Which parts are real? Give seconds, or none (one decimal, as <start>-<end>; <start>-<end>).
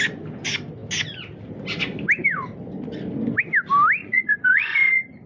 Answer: 0.0-4.0